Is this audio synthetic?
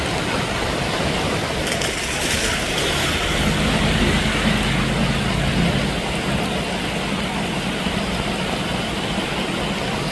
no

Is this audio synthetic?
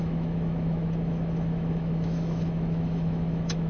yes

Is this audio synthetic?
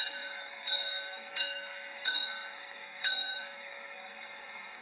yes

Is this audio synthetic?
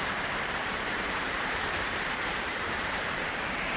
yes